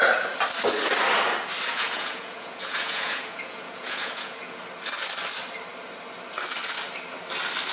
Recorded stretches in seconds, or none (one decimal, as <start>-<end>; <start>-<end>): 0.0-1.7; 4.6-7.7